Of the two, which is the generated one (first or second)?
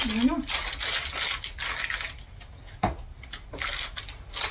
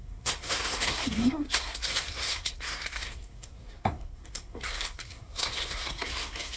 second